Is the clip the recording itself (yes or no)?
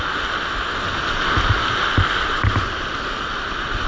yes